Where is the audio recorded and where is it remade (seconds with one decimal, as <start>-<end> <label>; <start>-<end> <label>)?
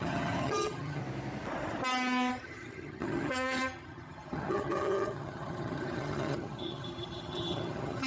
0.0-1.0 remade; 1.0-2.3 recorded; 2.3-8.1 remade